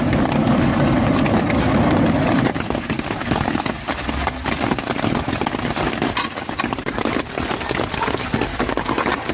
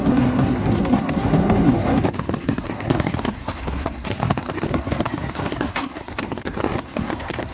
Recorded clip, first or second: first